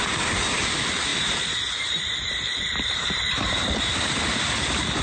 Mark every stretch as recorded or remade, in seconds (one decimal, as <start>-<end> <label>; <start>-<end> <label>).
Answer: 0.0-5.0 remade